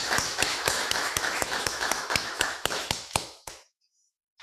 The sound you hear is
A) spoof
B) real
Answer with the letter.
A